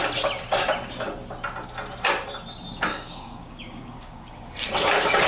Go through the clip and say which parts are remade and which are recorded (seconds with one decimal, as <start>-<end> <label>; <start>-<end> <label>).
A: 0.0-2.9 recorded; 2.9-4.3 remade; 4.3-5.3 recorded